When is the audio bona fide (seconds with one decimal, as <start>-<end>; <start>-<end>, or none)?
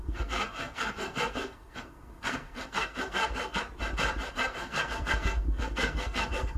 3.6-4.3